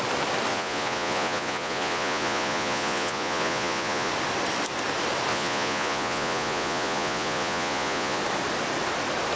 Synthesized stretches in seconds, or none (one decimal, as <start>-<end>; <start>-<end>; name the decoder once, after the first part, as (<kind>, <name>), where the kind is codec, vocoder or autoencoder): 0.5-4.1 (vocoder, Vocos); 5.3-8.2